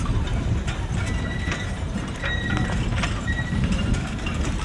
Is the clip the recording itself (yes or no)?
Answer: no